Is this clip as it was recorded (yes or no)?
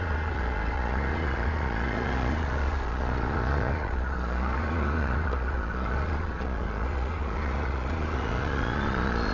no